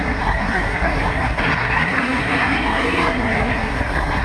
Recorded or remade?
remade